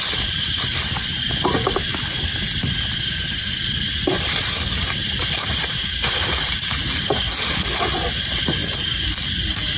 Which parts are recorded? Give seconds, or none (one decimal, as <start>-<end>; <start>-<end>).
1.9-3.5; 8.6-9.8